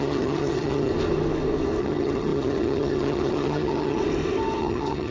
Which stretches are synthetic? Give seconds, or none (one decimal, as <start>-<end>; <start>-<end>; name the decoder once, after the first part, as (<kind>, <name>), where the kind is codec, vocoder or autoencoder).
0.0-0.9 (vocoder, HiFi-GAN); 1.8-4.0; 4.6-5.1